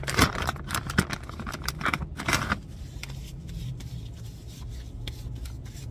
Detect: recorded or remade recorded